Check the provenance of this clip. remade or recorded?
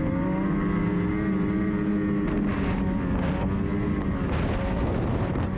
recorded